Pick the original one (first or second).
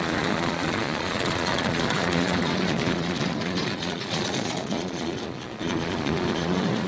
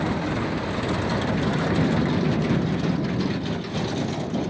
second